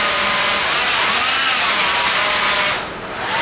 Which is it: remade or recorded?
recorded